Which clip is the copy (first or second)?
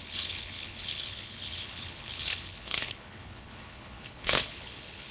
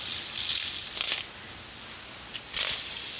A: first